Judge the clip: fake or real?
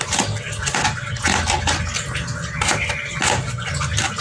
real